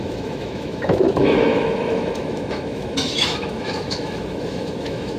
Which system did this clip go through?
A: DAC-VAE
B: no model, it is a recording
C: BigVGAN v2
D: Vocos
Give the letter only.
A